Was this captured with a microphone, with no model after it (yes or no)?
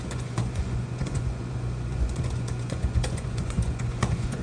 no